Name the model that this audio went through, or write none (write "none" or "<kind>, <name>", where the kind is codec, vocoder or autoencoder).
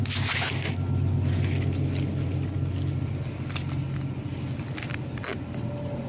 none